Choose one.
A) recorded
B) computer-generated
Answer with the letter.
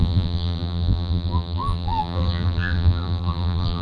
B